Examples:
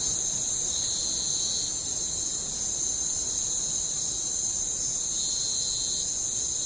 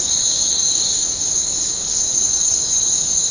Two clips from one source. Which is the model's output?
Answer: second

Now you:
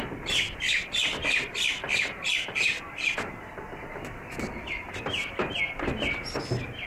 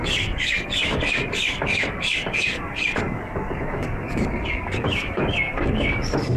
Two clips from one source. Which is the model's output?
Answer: second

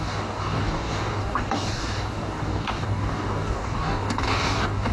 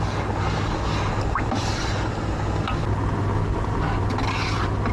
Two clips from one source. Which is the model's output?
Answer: first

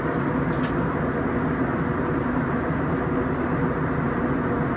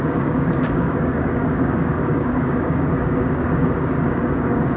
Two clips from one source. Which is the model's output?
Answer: second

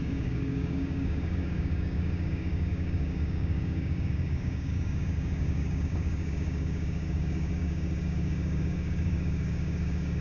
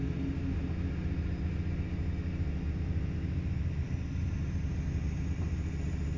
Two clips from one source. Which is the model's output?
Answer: first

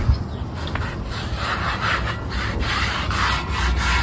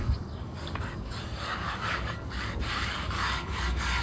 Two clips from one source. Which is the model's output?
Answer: second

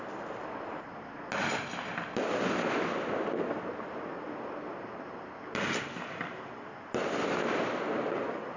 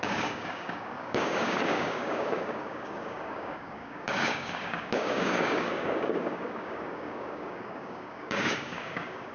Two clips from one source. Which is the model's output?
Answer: second